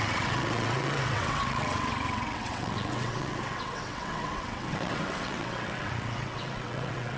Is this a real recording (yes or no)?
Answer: no